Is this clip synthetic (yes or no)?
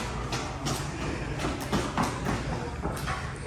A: no